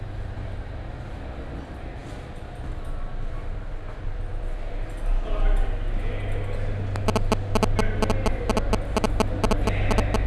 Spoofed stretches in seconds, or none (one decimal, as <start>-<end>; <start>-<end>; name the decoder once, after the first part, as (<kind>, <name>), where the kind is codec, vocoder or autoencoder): none